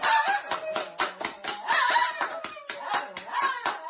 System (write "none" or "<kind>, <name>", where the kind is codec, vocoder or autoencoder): none